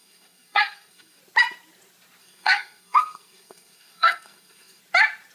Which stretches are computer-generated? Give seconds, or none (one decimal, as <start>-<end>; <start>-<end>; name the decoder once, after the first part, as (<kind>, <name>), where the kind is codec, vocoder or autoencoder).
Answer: 0.0-1.2 (codec, SNAC); 2.2-4.8